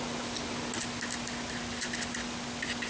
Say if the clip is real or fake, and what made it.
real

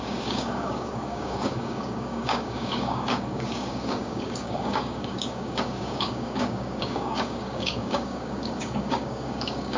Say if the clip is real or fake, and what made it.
fake, codec, DAC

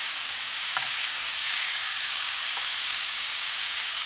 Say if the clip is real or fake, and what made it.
fake, codec, DAC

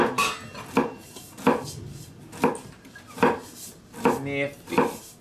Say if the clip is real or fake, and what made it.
real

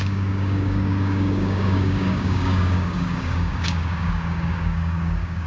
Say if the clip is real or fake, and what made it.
fake, codec, DAC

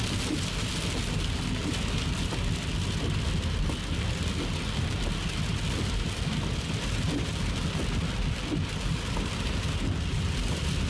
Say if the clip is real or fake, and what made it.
real